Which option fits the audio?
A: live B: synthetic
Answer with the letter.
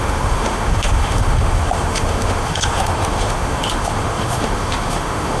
B